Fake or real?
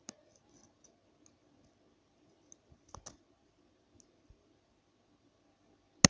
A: real